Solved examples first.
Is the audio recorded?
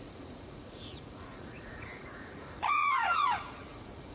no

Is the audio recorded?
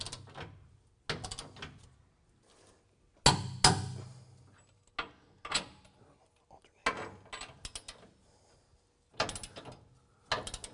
yes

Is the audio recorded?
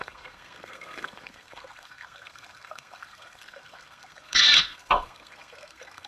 no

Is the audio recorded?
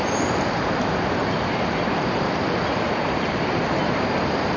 no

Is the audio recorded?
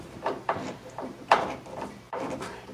no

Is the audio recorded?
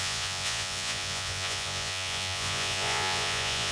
no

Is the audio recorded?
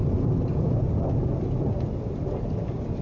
yes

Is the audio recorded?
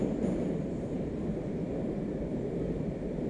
no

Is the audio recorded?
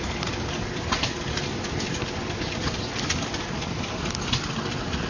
yes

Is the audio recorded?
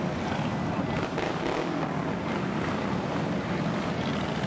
yes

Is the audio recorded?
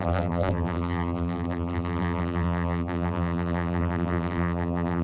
no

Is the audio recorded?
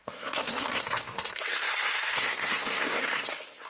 no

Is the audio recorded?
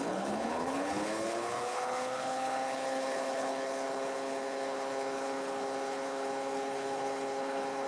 no